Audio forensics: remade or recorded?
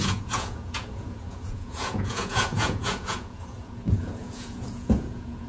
remade